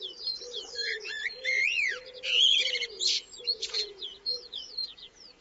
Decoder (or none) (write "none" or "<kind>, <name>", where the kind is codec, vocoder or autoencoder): vocoder, Vocos